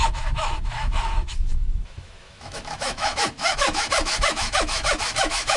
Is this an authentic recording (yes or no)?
no